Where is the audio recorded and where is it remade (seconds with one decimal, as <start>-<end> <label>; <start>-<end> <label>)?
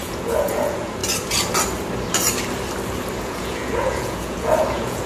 0.0-1.0 remade; 1.0-3.2 recorded; 3.2-5.1 remade